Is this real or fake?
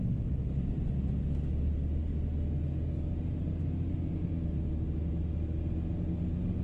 real